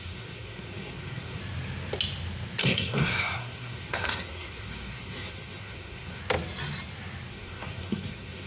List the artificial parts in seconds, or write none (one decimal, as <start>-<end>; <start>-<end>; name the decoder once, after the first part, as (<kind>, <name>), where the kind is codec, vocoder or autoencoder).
0.0-1.4 (codec, SNAC); 2.6-6.2; 7.3-8.5